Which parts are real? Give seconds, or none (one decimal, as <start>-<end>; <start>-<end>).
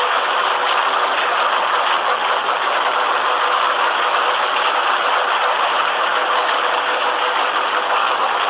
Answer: 0.0-8.5